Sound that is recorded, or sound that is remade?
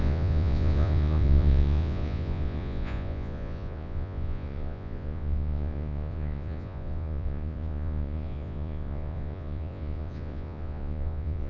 remade